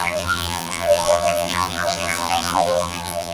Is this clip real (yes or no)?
no